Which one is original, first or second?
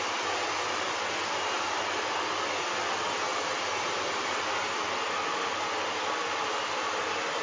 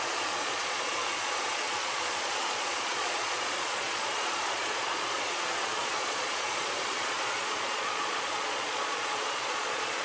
first